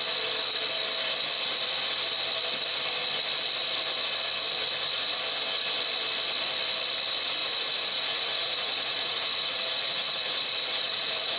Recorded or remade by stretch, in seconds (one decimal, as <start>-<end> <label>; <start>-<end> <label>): 0.0-7.4 recorded; 7.4-11.4 remade